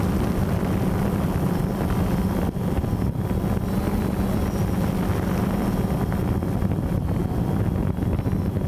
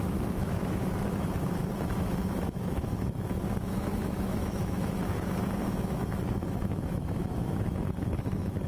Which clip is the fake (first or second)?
second